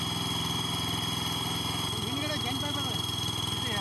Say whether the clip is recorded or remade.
recorded